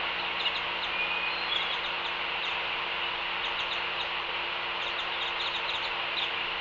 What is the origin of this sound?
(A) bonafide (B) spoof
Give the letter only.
A